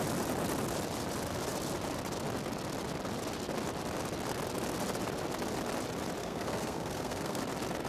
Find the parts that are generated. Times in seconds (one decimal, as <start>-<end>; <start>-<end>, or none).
6.2-7.4